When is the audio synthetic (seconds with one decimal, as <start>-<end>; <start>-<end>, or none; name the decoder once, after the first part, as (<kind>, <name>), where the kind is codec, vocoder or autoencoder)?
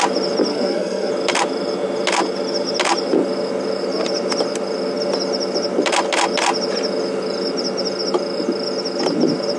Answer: 0.5-1.1 (codec, SNAC)